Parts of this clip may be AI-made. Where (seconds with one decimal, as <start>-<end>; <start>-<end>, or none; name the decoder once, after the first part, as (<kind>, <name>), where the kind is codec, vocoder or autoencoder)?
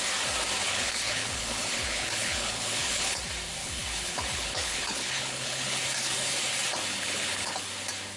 0.6-3.2 (codec, HILCodec); 3.6-5.8; 6.9-7.7